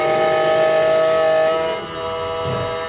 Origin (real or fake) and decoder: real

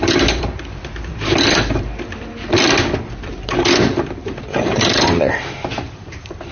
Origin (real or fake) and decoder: fake, vocoder, BigVGAN v2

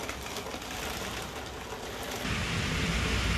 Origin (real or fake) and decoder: real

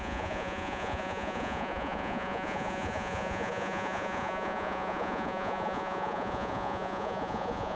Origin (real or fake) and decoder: fake, vocoder, Vocos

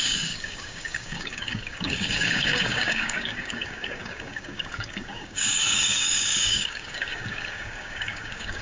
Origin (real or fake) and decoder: fake, codec, DAC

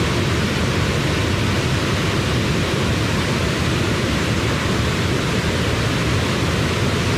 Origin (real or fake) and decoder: real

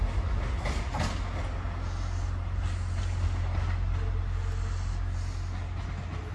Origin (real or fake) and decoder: real